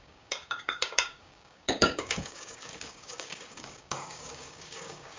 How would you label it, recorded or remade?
remade